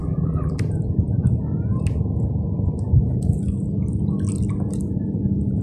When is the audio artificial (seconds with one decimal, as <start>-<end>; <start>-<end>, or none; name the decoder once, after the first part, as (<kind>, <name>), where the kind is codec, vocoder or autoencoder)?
0.0-0.6 (vocoder, BigVGAN v2)